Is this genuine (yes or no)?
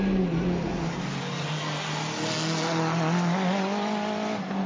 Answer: yes